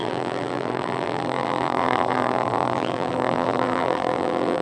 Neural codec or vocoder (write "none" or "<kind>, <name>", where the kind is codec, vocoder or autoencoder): vocoder, BigVGAN v2